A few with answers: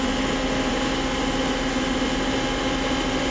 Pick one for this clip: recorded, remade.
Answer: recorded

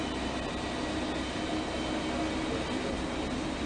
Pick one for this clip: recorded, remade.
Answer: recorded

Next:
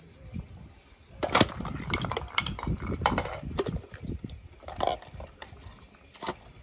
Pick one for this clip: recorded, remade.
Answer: recorded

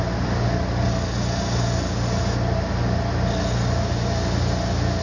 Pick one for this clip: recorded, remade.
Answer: recorded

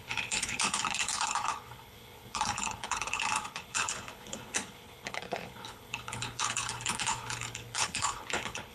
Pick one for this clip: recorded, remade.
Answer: remade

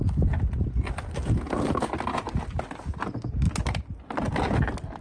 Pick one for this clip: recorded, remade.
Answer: recorded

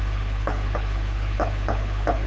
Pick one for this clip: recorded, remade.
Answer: remade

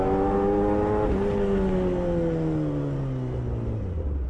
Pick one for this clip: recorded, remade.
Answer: recorded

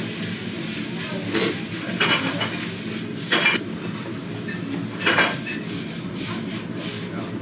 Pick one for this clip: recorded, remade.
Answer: recorded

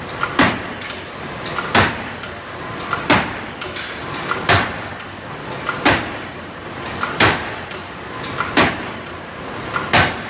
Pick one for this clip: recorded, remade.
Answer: recorded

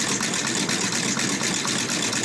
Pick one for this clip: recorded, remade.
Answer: recorded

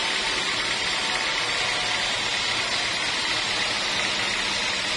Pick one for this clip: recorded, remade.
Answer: recorded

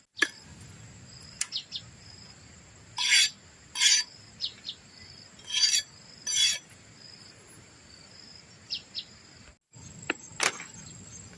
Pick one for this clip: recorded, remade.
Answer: recorded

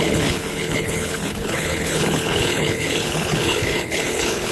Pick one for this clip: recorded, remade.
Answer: remade